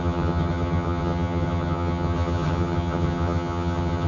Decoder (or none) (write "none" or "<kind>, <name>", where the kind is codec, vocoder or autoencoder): vocoder, HiFi-GAN